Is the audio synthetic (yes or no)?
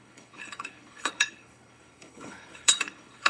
yes